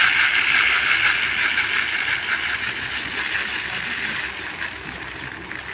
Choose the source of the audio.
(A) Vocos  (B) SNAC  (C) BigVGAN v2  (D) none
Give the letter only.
D